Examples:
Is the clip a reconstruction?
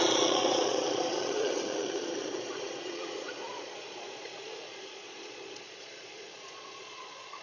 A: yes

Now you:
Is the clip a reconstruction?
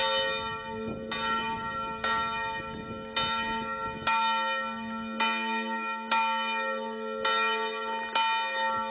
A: no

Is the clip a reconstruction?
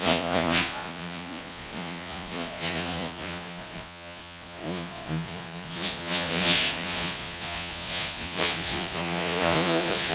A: yes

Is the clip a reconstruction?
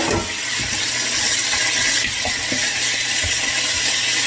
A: no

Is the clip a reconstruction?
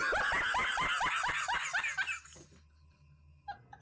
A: no